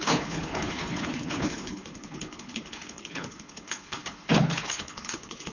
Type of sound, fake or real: fake